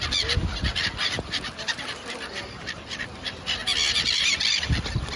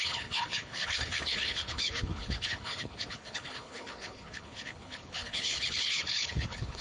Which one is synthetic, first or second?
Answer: second